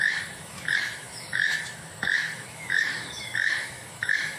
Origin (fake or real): fake